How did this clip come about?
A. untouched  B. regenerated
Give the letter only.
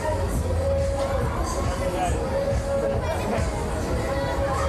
A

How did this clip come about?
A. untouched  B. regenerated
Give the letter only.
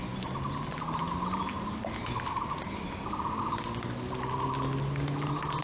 A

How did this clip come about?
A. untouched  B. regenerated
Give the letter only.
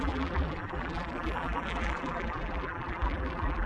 B